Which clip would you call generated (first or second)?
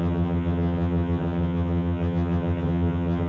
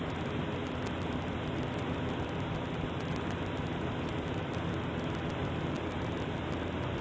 first